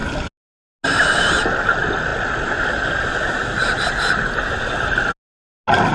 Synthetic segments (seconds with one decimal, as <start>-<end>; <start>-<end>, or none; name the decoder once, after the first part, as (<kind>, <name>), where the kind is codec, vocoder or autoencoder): none